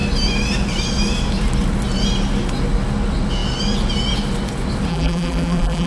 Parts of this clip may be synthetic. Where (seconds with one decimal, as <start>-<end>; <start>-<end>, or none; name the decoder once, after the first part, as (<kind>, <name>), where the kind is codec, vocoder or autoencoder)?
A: 4.9-5.9 (vocoder, BigVGAN v2)